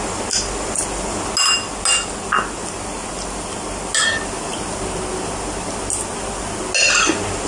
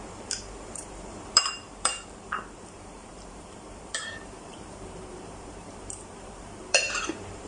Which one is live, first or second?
first